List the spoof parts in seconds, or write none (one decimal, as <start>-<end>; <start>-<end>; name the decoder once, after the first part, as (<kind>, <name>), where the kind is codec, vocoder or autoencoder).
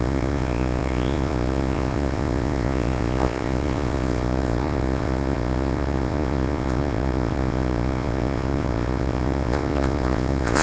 0.0-10.6 (vocoder, Vocos)